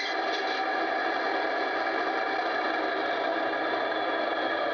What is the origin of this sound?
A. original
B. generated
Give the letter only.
A